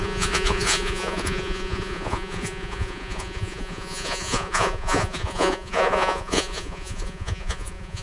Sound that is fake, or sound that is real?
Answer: fake